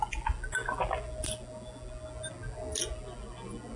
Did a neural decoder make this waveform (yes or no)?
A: no